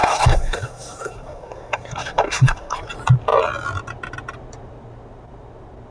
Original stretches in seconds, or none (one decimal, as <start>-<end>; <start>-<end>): 2.9-5.9